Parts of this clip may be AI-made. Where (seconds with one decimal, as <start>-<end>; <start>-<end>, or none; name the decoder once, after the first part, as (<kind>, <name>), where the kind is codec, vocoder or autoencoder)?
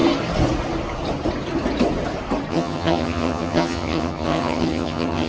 2.5-5.3 (vocoder, HiFi-GAN)